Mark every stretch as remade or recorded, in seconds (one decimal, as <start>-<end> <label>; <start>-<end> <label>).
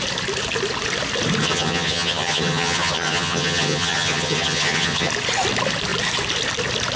0.0-1.4 recorded; 1.4-5.1 remade; 5.1-7.0 recorded